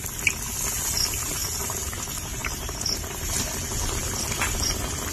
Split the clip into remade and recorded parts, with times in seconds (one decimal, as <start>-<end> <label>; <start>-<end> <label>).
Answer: 0.0-2.4 recorded; 2.4-3.4 remade; 3.4-5.1 recorded